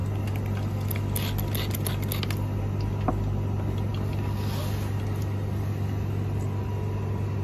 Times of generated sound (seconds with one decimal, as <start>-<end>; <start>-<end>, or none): none